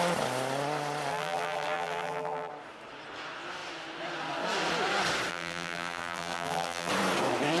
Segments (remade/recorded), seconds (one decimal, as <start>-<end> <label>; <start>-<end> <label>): 0.0-1.1 recorded; 1.1-2.5 remade; 2.5-5.3 recorded; 5.3-6.9 remade; 6.9-7.6 recorded

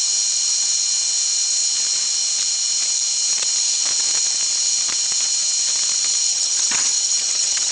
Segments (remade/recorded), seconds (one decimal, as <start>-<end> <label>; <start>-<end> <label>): 0.0-6.3 recorded; 6.3-7.7 remade

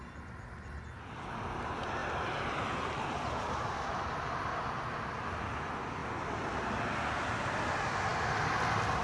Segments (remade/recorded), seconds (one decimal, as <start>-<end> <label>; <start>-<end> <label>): 0.0-9.0 recorded